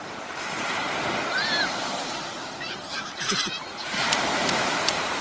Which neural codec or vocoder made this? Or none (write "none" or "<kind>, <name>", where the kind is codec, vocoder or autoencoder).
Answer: vocoder, BigVGAN v2